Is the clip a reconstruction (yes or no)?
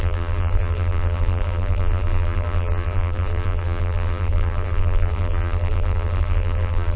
yes